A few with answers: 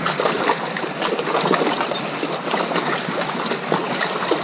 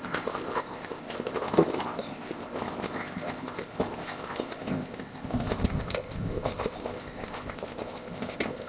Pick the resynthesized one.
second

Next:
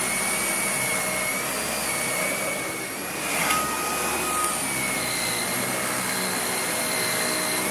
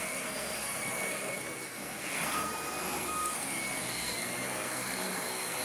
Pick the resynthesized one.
second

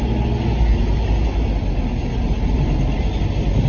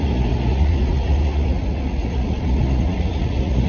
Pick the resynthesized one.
second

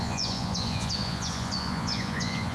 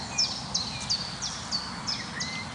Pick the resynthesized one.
first